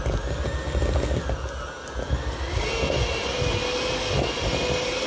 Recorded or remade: recorded